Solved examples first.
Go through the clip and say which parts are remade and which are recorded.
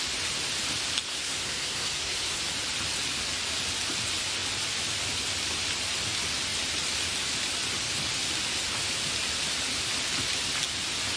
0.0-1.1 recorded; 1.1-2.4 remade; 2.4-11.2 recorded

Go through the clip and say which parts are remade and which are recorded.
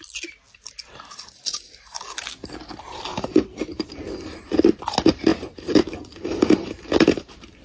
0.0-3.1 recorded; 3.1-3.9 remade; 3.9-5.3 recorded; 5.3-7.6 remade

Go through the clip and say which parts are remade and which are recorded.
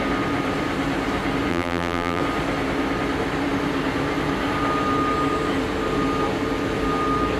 0.0-1.5 recorded; 1.5-2.2 remade; 2.2-7.4 recorded